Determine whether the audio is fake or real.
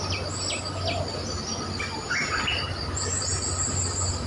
real